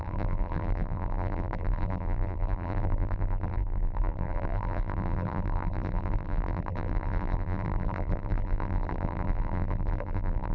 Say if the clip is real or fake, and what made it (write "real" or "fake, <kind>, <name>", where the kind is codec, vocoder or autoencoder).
fake, vocoder, BigVGAN v2